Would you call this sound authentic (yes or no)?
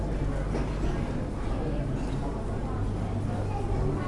yes